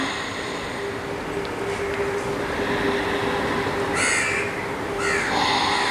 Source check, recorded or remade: recorded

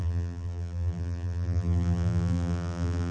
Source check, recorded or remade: remade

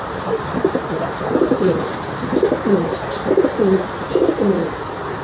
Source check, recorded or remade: remade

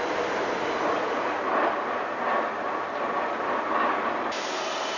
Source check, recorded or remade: recorded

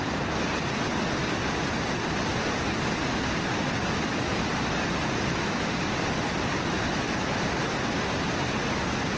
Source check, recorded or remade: recorded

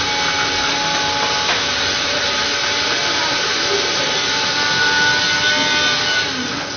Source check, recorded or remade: recorded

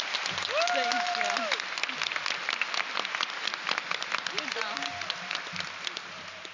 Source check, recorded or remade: recorded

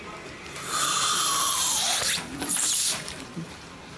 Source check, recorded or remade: remade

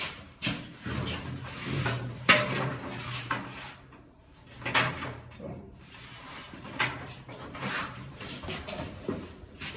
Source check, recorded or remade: remade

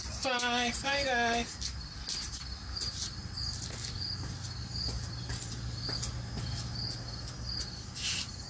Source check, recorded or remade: recorded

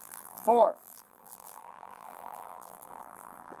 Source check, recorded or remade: remade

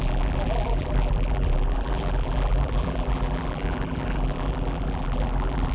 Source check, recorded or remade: remade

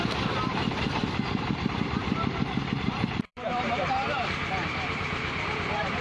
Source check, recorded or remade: remade